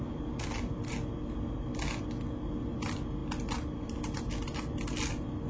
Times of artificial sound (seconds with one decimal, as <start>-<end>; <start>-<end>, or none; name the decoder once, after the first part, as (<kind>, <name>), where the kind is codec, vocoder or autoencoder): none